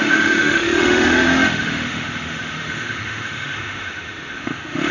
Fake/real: fake